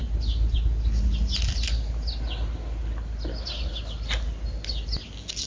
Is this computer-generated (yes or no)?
no